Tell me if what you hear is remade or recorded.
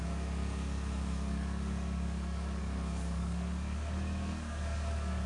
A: remade